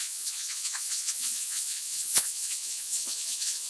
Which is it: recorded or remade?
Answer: remade